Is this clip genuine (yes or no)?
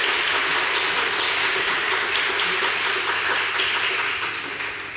yes